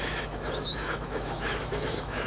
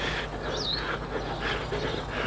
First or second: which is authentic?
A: second